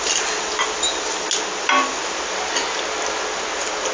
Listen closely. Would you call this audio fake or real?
real